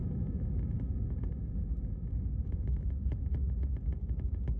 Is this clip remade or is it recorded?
remade